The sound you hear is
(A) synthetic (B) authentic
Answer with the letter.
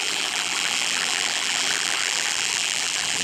A